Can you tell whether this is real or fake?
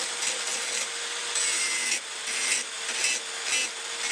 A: real